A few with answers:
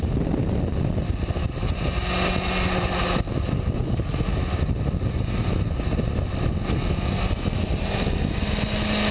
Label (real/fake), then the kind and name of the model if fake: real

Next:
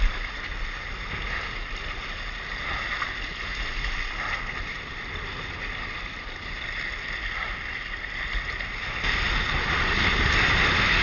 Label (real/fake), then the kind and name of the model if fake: real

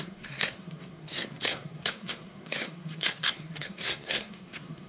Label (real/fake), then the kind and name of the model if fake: fake, codec, SNAC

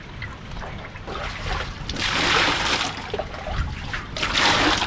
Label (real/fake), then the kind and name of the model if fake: real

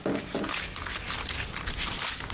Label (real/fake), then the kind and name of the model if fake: real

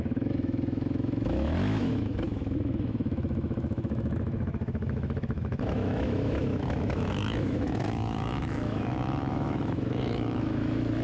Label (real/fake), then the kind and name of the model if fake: fake, autoencoder, DAC-VAE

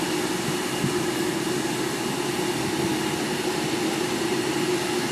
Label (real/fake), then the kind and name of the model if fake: real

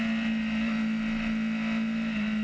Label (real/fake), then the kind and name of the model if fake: real